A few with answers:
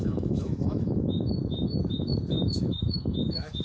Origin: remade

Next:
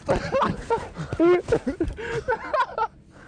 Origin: recorded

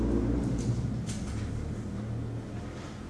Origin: recorded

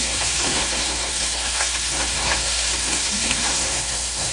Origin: remade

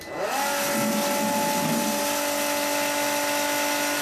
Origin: recorded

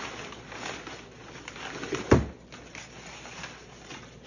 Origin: recorded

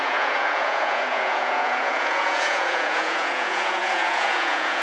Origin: remade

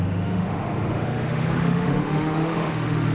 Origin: remade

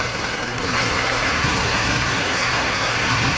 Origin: remade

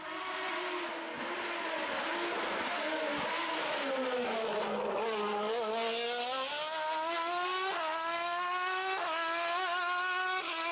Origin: recorded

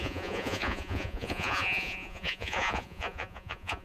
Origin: remade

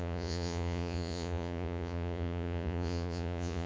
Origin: remade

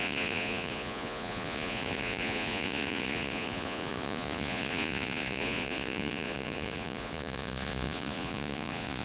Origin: remade